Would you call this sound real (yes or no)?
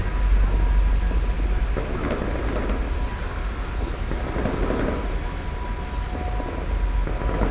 yes